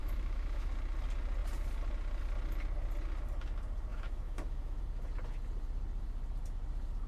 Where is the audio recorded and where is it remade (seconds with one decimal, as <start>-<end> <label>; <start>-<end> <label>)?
0.0-0.7 remade; 0.7-3.9 recorded; 3.9-4.8 remade; 4.8-7.1 recorded